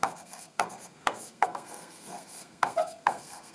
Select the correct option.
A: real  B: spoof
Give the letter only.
B